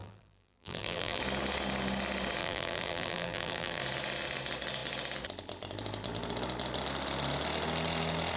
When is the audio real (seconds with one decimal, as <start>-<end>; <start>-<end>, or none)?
1.2-2.4; 3.8-8.4